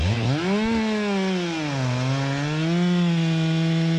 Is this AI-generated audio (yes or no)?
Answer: no